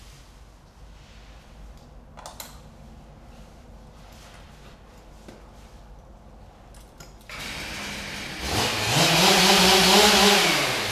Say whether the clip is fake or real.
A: real